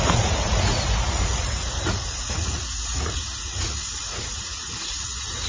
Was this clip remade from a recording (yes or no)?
yes